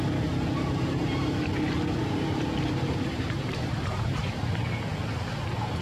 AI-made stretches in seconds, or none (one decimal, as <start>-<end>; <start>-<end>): 2.0-4.2